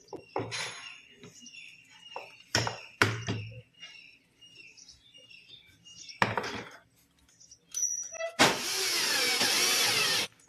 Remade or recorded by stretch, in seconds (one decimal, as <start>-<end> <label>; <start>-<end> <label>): 0.0-1.9 recorded; 1.9-6.0 remade; 6.0-10.5 recorded